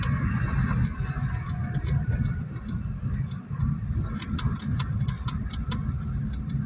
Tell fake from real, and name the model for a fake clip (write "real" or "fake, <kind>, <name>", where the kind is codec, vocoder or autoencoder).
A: real